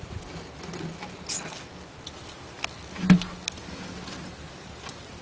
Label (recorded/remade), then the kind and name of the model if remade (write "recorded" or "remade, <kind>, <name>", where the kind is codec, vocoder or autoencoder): recorded